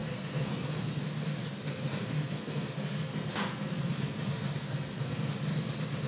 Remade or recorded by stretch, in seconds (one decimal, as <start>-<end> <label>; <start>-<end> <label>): 0.0-1.0 remade; 1.0-1.6 recorded; 1.6-5.3 remade; 5.3-6.1 recorded